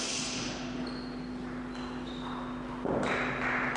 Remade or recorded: recorded